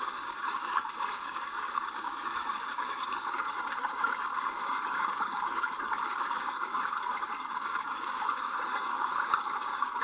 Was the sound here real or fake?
fake